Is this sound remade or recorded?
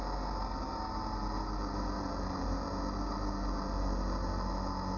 recorded